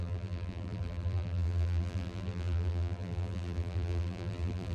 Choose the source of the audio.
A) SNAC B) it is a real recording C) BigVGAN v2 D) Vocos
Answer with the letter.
C